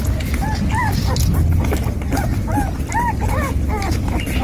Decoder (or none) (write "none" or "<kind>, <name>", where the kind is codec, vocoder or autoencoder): none